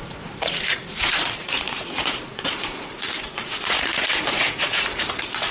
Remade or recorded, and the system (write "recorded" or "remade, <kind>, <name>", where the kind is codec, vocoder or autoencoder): remade, vocoder, Vocos